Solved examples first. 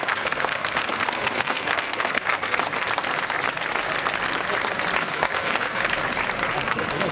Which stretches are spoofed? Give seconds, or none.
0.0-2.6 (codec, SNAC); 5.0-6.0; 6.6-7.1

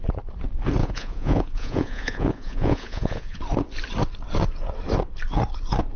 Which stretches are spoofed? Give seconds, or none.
0.8-3.4 (vocoder, Vocos)

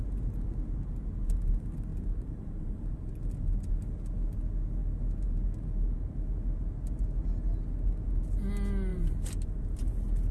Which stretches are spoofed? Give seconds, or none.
1.9-3.1 (vocoder, BigVGAN v2); 8.9-9.8

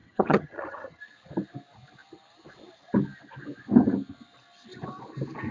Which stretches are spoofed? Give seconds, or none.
0.0-1.0 (vocoder, HiFi-GAN)

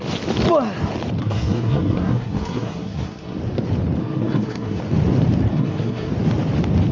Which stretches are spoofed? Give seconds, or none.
1.2-3.4 (codec, SNAC); 4.0-4.8; 5.5-6.1

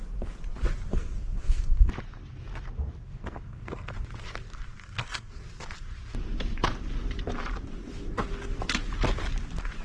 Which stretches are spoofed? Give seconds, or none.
0.9-1.9 (codec, SNAC); 3.0-3.9; 4.8-5.4

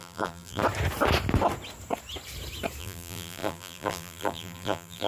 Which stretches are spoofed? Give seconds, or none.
0.0-0.6 (vocoder, BigVGAN v2); 2.8-5.1